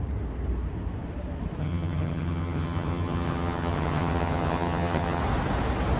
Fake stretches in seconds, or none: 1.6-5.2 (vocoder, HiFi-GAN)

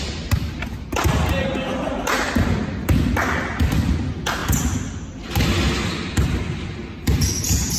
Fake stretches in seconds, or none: none

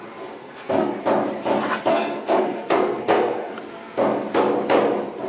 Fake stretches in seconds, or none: 0.4-1.0 (codec, SNAC); 1.9-3.5

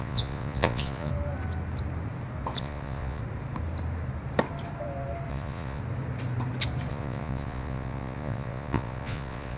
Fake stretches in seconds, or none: 0.0-1.1 (vocoder, Vocos); 2.6-3.2; 5.3-5.8; 6.9-9.6

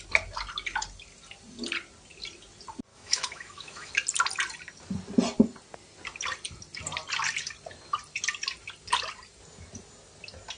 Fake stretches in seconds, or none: 2.9-3.9 (autoencoder, DAC-VAE)

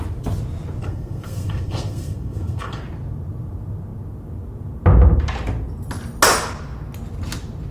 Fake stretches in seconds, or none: 0.8-2.8 (codec, SNAC)